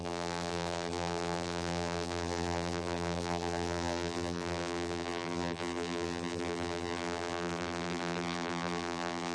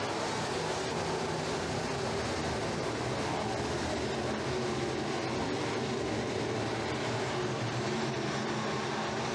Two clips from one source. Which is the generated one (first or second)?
first